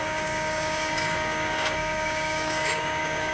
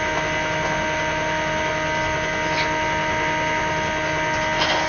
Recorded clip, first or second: second